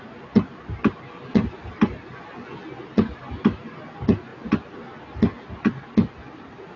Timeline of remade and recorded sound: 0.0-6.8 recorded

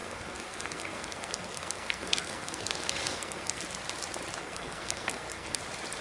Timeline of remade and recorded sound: 0.0-3.6 remade; 3.6-4.4 recorded; 4.4-5.6 remade; 5.6-6.0 recorded